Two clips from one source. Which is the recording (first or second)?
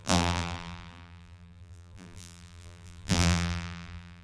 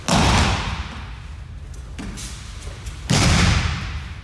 second